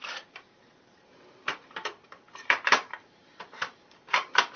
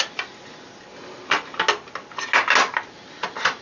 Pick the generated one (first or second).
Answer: first